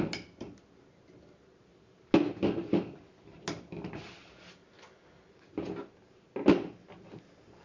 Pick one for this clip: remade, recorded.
recorded